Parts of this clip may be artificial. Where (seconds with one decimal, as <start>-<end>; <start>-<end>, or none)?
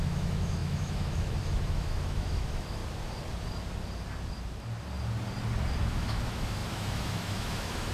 0.0-2.8; 5.8-7.9